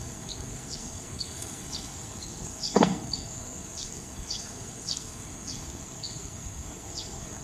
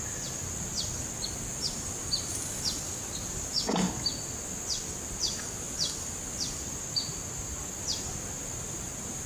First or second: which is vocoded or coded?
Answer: first